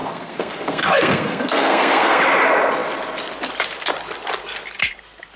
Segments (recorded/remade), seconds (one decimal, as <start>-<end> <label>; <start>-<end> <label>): 0.0-2.2 remade; 2.2-5.4 recorded